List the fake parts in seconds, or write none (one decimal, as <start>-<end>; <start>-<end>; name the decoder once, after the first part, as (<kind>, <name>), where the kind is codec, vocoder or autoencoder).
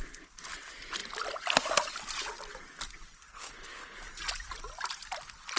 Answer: 3.3-4.0 (codec, HILCodec)